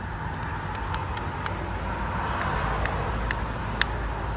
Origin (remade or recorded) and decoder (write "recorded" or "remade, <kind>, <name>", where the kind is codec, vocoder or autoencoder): recorded